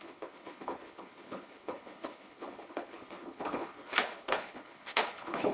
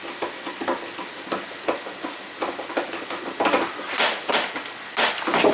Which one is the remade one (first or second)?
first